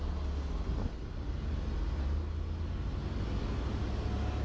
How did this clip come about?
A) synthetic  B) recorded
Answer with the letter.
B